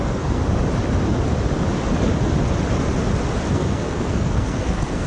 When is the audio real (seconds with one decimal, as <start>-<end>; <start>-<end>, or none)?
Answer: 0.4-3.5